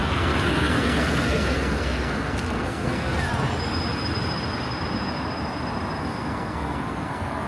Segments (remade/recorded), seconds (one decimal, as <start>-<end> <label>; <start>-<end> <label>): 0.0-3.3 remade; 3.3-6.0 recorded; 6.0-7.5 remade